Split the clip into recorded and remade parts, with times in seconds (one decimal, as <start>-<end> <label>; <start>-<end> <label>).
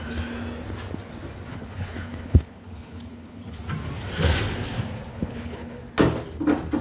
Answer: 0.0-1.5 recorded; 1.5-3.6 remade; 3.6-5.1 recorded; 5.1-5.8 remade; 5.8-6.8 recorded